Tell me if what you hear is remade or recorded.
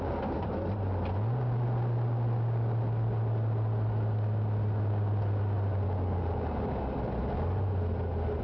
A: recorded